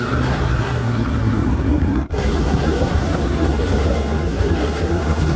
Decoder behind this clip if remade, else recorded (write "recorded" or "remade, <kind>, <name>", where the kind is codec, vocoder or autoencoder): remade, codec, SNAC